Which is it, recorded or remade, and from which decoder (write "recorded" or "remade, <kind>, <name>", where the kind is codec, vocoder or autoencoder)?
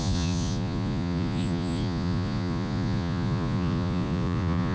remade, vocoder, Vocos